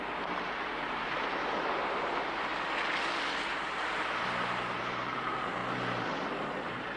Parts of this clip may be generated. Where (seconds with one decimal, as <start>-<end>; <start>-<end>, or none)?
0.0-2.5; 3.4-5.6; 6.4-7.0